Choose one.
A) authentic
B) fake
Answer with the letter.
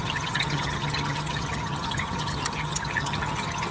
B